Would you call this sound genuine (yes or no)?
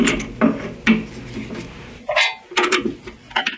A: yes